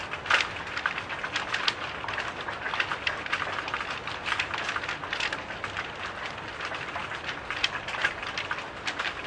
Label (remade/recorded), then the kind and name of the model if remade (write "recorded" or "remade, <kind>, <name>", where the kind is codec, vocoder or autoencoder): recorded